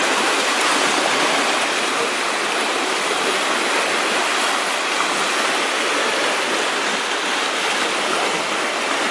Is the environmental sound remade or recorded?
recorded